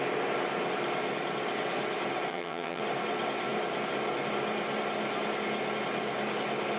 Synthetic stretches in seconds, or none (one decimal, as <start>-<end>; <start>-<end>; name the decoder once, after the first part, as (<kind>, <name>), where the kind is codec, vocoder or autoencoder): 2.3-2.8 (vocoder, HiFi-GAN)

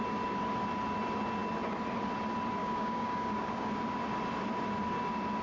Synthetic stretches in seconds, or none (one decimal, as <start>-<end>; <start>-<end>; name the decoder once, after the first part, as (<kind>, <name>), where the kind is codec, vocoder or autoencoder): 2.6-3.7 (codec, DAC)

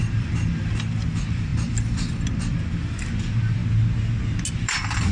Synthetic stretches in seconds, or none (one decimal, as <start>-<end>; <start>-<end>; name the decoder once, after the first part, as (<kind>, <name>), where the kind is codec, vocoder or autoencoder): 0.0-3.6 (vocoder, BigVGAN v2); 4.5-5.1

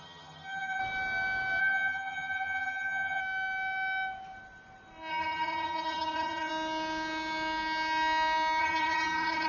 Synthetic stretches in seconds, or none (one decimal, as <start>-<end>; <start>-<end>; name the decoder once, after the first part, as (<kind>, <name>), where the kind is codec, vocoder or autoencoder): 0.0-0.8 (vocoder, HiFi-GAN); 1.6-3.2; 5.1-6.5; 8.6-9.5